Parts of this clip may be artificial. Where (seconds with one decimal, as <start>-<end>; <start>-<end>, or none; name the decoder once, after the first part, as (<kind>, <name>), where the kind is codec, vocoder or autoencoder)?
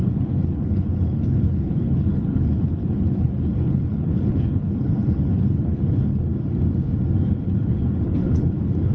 0.0-6.3 (codec, HILCodec); 7.4-8.9